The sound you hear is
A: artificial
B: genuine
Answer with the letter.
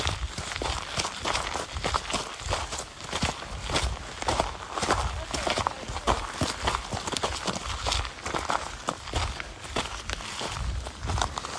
B